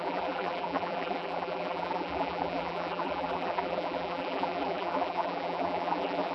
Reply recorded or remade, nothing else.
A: remade